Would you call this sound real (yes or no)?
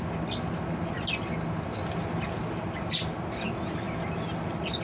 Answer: yes